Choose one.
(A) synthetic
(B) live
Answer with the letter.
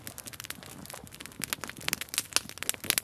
B